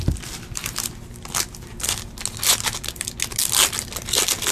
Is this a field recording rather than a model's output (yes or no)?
yes